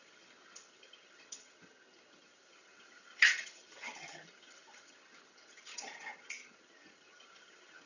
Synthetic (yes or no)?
yes